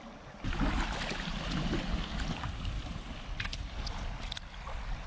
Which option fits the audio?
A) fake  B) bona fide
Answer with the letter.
B